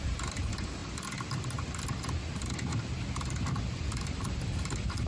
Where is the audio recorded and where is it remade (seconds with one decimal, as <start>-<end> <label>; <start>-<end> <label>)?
0.0-0.8 remade; 0.8-3.9 recorded; 3.9-5.1 remade